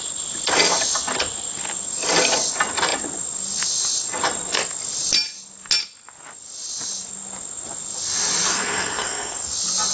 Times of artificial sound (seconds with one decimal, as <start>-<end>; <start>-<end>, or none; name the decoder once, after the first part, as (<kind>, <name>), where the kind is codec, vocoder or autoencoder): 8.5-9.5 (codec, SNAC)

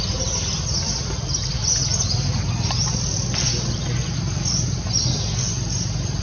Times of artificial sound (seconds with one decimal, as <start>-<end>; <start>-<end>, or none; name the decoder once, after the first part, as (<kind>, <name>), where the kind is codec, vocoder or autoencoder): none

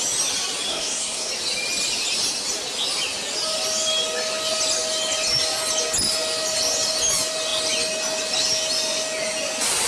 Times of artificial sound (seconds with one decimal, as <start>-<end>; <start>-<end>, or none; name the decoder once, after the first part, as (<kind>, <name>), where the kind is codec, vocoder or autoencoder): 0.7-1.3 (codec, SNAC)

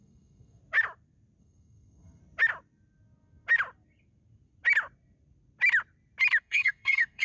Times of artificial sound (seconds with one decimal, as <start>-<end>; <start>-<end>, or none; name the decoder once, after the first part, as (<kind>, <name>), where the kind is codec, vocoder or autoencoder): 0.0-0.6 (codec, SNAC); 1.4-2.2; 6.4-7.2

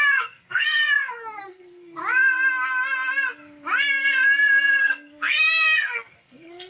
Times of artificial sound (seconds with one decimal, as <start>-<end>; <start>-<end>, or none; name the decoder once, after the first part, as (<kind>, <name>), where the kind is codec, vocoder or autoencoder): 0.0-2.0 (codec, SNAC); 4.8-6.7

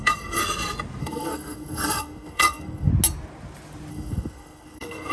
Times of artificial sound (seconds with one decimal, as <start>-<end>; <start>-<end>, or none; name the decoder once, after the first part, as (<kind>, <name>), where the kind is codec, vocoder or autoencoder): 0.0-0.4 (codec, SNAC); 1.0-2.9; 3.9-5.1